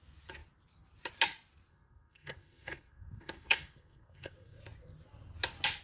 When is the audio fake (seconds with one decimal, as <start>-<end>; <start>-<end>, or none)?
1.7-4.6